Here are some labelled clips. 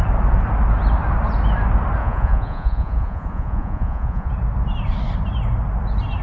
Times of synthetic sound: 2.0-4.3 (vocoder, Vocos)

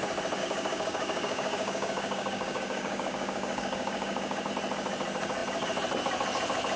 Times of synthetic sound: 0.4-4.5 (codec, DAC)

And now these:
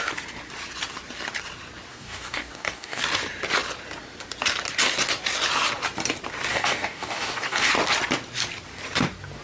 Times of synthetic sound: 1.9-3.0 (codec, DAC); 6.5-7.7